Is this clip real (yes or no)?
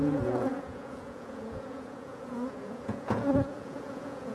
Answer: no